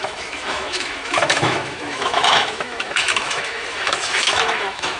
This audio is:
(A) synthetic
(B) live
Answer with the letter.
A